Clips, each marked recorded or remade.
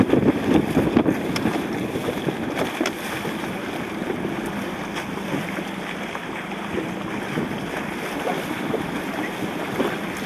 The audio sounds recorded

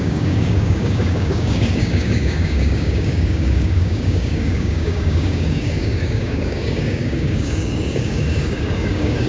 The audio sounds remade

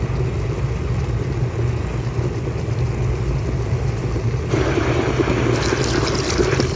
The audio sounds recorded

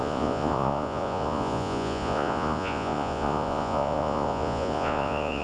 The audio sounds remade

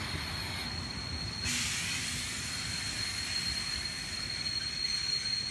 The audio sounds recorded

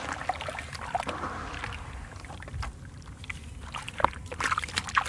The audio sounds recorded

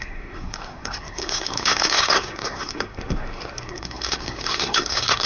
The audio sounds remade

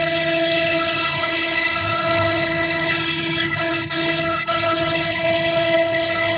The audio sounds remade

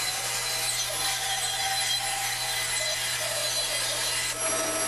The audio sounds recorded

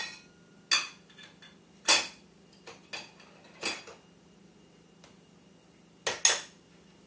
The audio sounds recorded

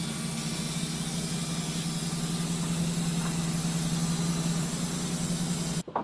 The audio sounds recorded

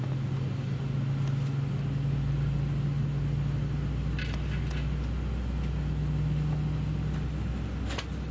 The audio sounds recorded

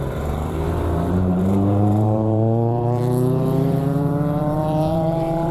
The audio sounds remade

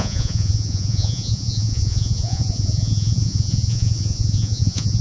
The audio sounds remade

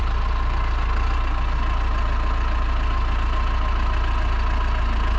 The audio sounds recorded